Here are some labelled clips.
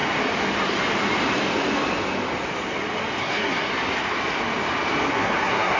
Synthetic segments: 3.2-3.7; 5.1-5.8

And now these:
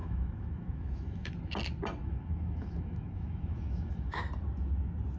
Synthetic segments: 0.0-1.3; 2.0-4.2

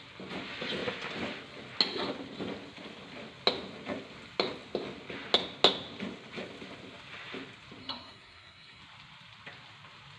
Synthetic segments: 7.8-8.8

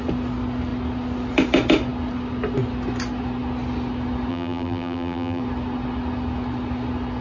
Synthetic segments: 4.3-5.4